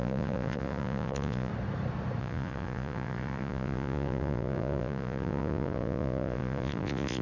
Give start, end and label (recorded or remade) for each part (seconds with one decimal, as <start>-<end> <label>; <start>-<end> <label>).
0.0-1.5 remade; 1.5-2.2 recorded; 2.2-7.2 remade